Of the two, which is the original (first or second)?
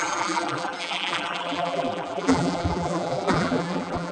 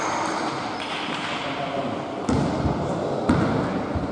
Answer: second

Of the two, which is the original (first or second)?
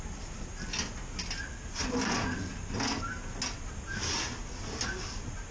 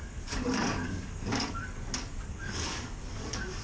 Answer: first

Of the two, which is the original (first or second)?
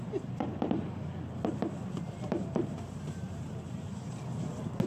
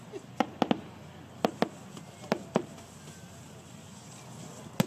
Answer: second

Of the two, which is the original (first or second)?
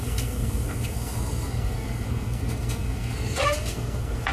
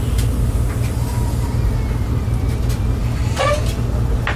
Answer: second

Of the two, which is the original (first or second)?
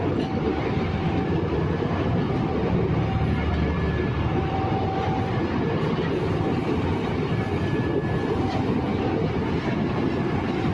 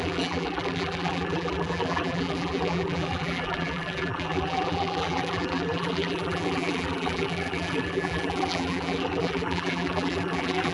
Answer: first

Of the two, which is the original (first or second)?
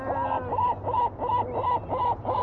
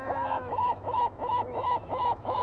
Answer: first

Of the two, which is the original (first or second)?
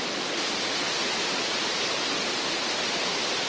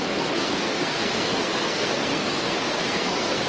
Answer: first